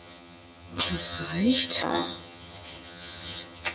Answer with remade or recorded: remade